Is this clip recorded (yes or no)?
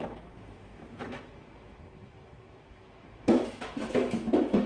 no